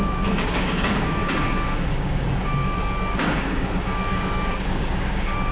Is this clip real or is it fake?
fake